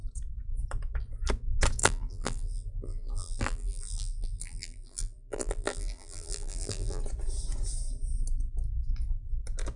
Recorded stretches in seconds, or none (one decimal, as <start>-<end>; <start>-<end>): 0.0-1.8; 7.0-9.8

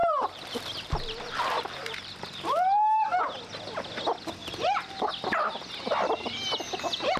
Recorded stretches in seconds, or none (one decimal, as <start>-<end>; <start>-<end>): 3.2-4.4; 5.1-7.2

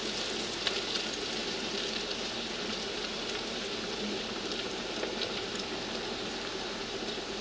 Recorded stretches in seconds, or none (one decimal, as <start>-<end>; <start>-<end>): 0.0-1.4; 5.5-6.8

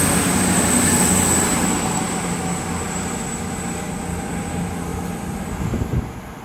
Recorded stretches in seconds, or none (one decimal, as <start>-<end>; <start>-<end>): 0.0-4.9; 5.4-6.4

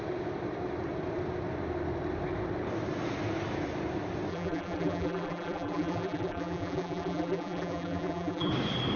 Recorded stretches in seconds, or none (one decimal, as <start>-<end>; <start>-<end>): 0.0-4.3; 8.5-9.0

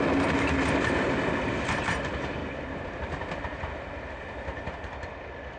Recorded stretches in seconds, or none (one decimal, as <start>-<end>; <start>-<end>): 0.0-2.4; 3.4-5.6

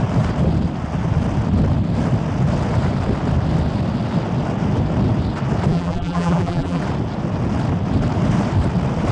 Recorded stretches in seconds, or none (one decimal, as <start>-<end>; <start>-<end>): 0.0-5.7; 6.8-9.1

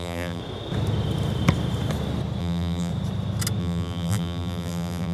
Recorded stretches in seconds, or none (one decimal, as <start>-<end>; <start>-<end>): 0.4-2.4; 2.9-3.6